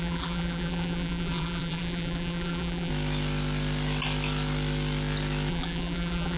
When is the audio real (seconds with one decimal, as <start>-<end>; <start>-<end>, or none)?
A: 2.9-5.5

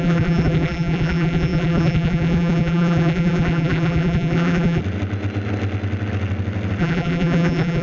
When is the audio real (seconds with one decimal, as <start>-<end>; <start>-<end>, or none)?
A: 4.8-6.8

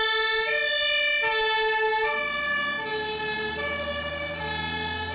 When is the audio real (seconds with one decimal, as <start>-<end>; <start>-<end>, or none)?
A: 0.0-2.9; 4.4-5.1